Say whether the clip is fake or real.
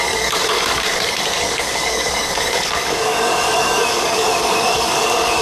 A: fake